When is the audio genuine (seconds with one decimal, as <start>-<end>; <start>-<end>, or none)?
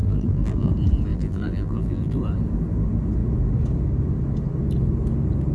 0.7-1.1; 2.2-5.5